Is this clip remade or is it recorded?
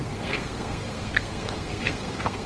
remade